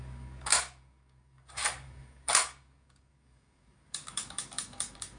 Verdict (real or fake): fake